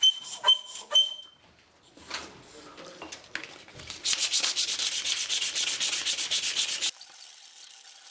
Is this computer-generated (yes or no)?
no